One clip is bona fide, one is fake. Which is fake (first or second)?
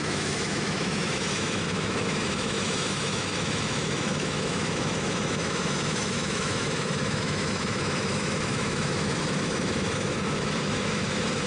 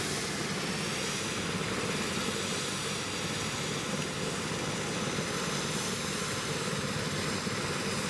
first